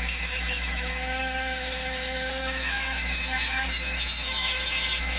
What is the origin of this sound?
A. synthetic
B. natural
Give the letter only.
A